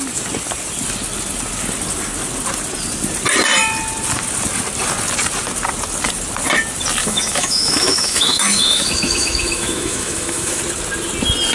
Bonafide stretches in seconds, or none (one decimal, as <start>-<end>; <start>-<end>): 0.0-7.0; 10.6-11.5